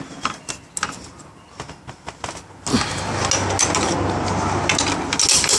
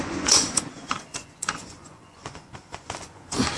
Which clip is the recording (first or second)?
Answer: first